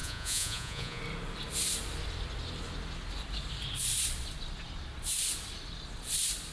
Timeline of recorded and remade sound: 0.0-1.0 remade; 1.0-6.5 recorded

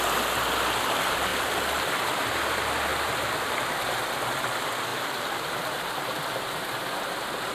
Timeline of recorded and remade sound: 0.0-1.3 recorded; 1.3-1.9 remade; 1.9-2.9 recorded; 2.9-3.5 remade; 3.5-4.9 recorded; 4.9-6.2 remade; 6.2-7.5 recorded

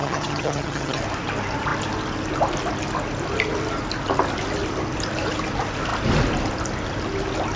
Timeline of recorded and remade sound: 0.0-1.0 remade; 1.0-7.6 recorded

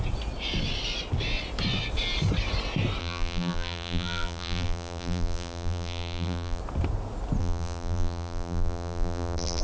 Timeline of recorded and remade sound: 0.0-3.0 recorded; 3.0-6.6 remade; 6.6-7.4 recorded; 7.4-9.6 remade

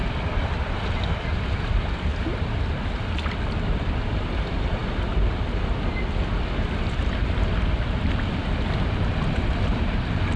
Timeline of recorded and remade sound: 0.0-2.1 remade; 2.1-2.9 recorded; 2.9-4.8 remade; 4.8-6.7 recorded; 6.7-10.4 remade